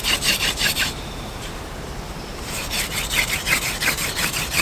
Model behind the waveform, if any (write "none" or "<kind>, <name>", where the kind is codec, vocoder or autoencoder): vocoder, BigVGAN v2